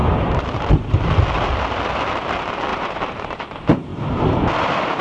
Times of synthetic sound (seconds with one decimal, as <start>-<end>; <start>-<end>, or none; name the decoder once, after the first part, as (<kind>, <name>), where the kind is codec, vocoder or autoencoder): 0.0-1.1 (vocoder, BigVGAN v2); 2.7-3.4